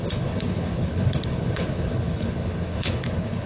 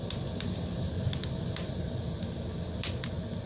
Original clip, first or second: second